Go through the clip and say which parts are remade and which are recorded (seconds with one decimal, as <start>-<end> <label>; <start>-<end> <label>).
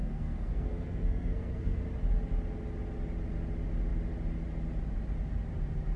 0.0-1.8 remade; 1.8-6.0 recorded